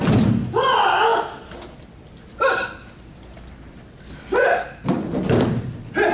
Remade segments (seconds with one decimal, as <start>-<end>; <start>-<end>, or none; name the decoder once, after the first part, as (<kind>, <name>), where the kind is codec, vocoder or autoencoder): none